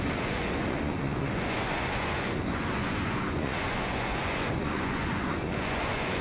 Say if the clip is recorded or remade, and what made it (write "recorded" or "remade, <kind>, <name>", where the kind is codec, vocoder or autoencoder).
remade, vocoder, Vocos